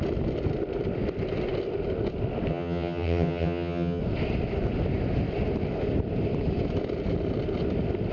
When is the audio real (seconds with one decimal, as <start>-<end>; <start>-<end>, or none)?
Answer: 0.0-2.5; 4.0-8.1